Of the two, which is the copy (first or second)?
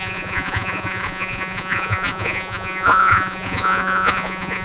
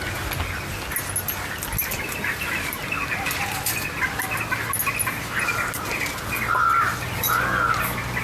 first